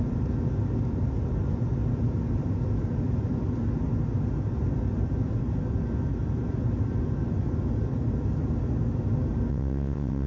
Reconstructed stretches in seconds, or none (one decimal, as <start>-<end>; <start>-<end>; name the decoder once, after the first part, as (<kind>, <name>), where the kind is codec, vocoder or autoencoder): 9.5-10.3 (vocoder, WaveNeXt)